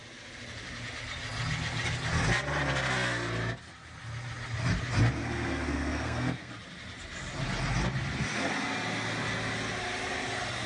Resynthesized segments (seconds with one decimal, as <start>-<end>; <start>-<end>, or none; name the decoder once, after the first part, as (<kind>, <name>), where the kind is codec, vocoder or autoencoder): 5.2-6.5 (codec, SNAC)